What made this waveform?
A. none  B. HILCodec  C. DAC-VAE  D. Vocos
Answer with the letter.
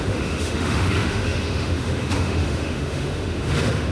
C